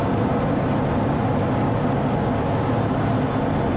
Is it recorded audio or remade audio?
recorded